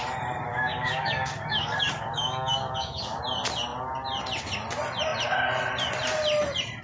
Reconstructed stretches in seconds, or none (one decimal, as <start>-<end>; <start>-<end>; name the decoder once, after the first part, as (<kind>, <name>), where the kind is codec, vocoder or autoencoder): 0.5-3.2 (codec, DAC)